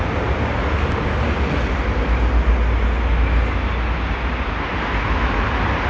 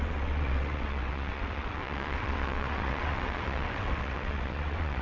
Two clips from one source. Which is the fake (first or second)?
second